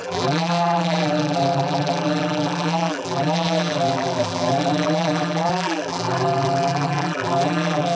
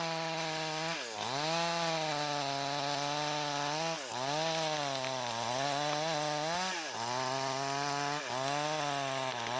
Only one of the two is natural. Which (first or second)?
second